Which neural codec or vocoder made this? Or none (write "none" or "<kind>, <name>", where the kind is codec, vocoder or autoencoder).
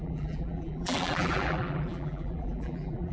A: vocoder, BigVGAN v2